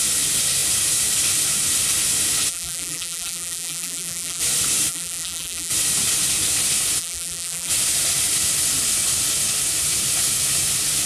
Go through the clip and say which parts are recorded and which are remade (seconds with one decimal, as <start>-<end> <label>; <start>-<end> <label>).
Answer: 0.0-2.5 recorded; 2.5-4.4 remade; 4.4-4.9 recorded; 4.9-5.7 remade; 5.7-7.0 recorded; 7.0-7.7 remade; 7.7-11.1 recorded